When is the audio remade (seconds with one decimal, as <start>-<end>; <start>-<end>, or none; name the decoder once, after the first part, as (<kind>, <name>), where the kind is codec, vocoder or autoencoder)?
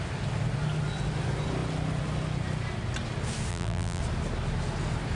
3.5-4.0 (vocoder, BigVGAN v2)